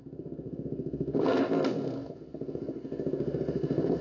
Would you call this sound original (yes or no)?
no